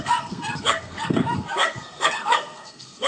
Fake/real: fake